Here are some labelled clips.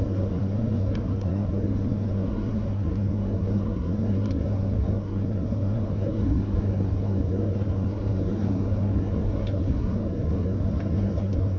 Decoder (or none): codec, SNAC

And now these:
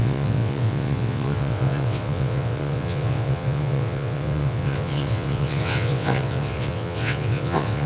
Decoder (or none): vocoder, WaveNeXt